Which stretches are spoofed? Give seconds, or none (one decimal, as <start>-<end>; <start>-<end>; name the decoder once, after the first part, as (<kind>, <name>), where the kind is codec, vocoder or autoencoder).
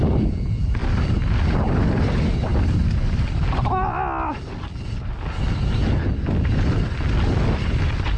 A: none